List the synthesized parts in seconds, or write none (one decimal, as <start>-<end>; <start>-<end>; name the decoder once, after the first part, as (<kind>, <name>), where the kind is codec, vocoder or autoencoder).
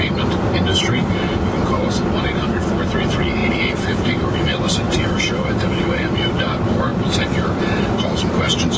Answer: 3.4-6.0 (vocoder, BigVGAN v2); 6.9-8.2